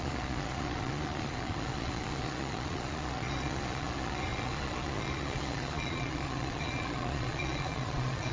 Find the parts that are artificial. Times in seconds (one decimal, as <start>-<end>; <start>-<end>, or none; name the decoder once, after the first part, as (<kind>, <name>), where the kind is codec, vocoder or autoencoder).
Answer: 0.0-8.3 (vocoder, Vocos)